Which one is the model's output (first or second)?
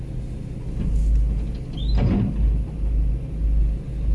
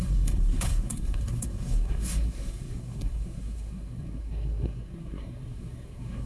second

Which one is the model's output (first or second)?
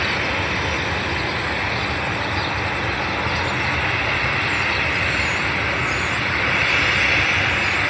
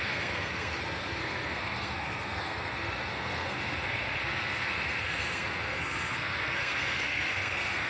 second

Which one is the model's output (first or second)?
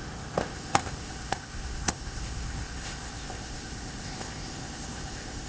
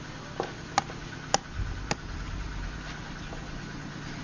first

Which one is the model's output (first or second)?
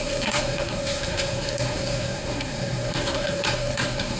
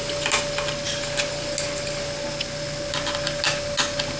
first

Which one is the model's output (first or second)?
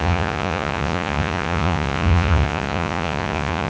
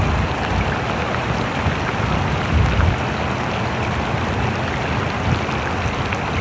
first